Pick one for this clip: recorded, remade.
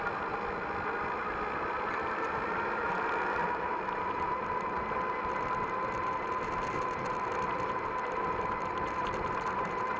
remade